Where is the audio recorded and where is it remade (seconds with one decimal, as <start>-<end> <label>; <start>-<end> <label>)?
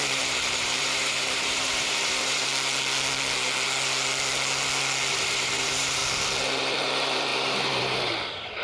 0.0-2.5 remade; 2.5-5.1 recorded; 5.1-6.0 remade; 6.0-6.8 recorded; 6.8-8.6 remade